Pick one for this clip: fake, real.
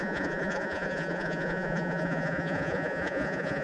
fake